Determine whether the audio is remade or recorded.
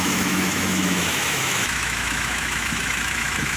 remade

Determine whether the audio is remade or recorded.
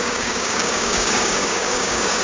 remade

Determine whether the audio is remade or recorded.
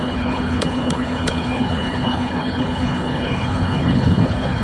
remade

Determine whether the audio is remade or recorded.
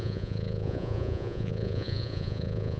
remade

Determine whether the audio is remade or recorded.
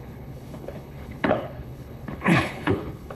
remade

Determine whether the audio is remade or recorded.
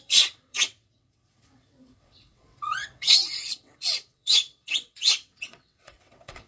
remade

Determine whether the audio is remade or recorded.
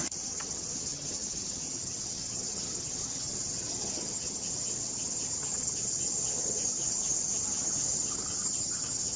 remade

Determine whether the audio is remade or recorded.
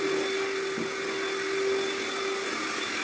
recorded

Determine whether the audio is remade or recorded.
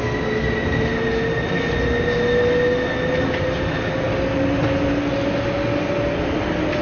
recorded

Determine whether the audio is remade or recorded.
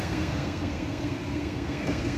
remade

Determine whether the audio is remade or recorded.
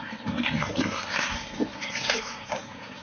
remade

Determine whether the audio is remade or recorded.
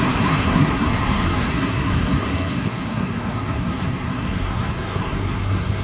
remade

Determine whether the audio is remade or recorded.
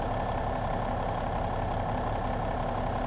recorded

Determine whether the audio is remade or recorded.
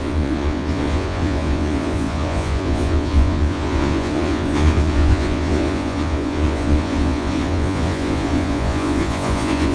remade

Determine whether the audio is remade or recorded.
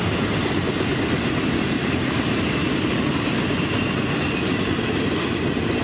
recorded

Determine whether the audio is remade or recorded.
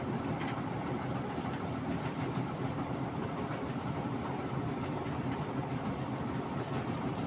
remade